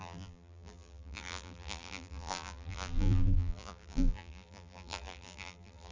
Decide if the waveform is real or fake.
fake